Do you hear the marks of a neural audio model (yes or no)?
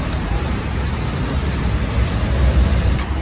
yes